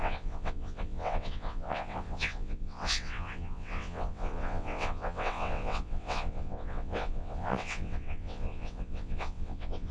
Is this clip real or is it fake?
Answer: fake